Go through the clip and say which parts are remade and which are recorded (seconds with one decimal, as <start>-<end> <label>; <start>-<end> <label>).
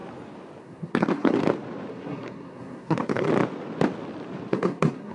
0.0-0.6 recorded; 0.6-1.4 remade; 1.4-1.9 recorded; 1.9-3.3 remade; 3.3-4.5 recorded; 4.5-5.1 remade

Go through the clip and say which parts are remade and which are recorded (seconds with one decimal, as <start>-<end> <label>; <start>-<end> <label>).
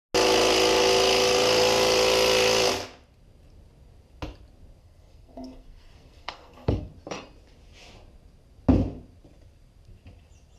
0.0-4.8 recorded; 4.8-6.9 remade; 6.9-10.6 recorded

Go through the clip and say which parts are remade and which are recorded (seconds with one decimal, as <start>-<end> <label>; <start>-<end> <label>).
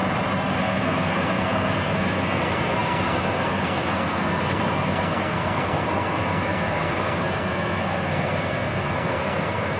0.0-0.6 recorded; 0.6-9.8 remade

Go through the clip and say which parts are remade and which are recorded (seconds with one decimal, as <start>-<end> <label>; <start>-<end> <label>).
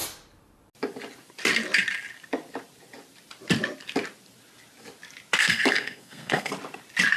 0.0-5.4 recorded; 5.4-6.5 remade; 6.5-7.2 recorded